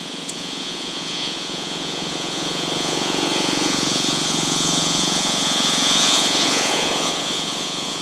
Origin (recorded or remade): remade